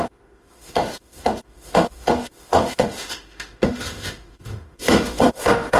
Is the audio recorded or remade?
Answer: remade